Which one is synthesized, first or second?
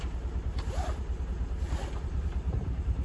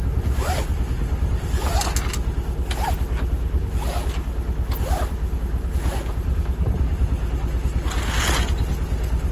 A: first